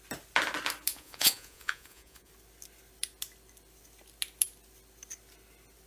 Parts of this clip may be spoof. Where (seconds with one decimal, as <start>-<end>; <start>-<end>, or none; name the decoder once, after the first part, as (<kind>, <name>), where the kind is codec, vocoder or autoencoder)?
0.9-2.3 (vocoder, Vocos)